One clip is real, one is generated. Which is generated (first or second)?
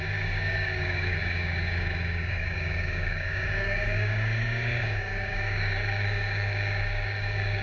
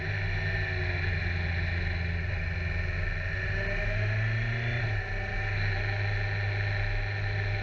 first